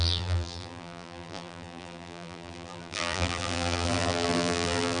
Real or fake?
fake